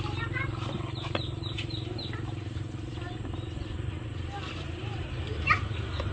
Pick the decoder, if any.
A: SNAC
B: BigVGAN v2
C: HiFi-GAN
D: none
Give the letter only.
B